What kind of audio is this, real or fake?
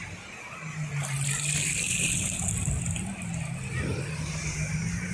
real